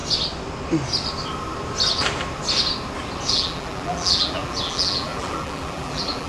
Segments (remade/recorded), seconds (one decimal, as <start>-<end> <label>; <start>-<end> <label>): 0.0-3.3 recorded; 3.3-6.3 remade